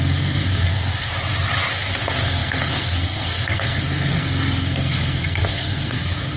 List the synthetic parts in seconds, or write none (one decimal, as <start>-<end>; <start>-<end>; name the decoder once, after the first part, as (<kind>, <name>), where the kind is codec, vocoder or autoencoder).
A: 0.0-1.1 (codec, SNAC); 1.7-6.4